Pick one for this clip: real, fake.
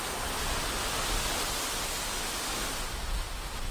real